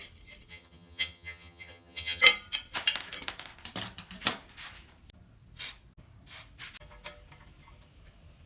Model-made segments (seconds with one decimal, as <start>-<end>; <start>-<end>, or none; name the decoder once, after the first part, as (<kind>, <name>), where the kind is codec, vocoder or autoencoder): 0.5-2.2 (vocoder, HiFi-GAN)